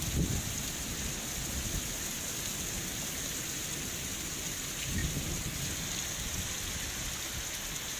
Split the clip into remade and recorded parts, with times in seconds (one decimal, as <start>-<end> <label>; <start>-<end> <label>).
0.0-5.0 recorded; 5.0-5.6 remade; 5.6-8.0 recorded

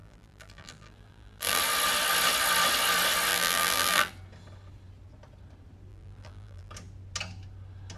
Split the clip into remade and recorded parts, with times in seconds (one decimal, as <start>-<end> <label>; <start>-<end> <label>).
0.0-1.6 remade; 1.6-3.3 recorded; 3.3-4.1 remade; 4.1-5.9 recorded; 5.9-6.7 remade; 6.7-8.0 recorded

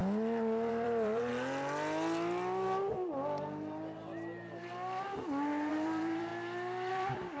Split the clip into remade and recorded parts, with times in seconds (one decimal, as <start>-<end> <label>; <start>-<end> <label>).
0.0-0.7 recorded; 0.7-1.3 remade; 1.3-5.7 recorded; 5.7-6.3 remade; 6.3-6.9 recorded; 6.9-7.4 remade

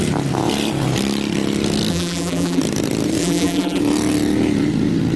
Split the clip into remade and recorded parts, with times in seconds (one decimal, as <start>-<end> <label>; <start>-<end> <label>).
0.0-1.9 recorded; 1.9-2.6 remade; 2.6-3.2 recorded; 3.2-3.8 remade; 3.8-5.2 recorded

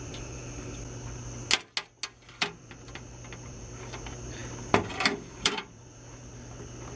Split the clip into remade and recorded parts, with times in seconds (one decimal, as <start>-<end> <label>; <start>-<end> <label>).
0.0-0.4 remade; 0.4-2.4 recorded; 2.4-6.2 remade; 6.2-7.0 recorded